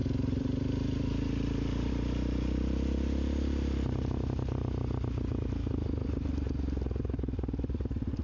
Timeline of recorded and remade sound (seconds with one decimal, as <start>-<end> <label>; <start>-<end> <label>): 0.0-1.9 remade; 1.9-8.2 recorded